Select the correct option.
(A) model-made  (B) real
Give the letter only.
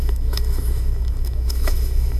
A